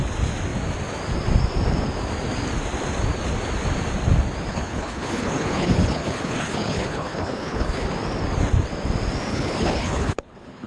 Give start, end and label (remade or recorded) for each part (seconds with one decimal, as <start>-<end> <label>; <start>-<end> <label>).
0.0-4.5 recorded; 4.5-7.9 remade; 7.9-9.3 recorded; 9.3-10.7 remade